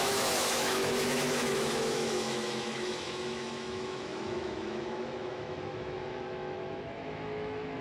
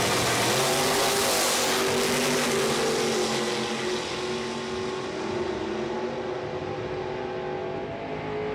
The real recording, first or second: second